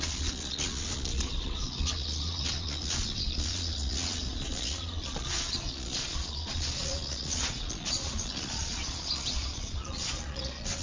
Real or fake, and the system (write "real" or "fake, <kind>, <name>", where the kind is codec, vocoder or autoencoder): fake, vocoder, Vocos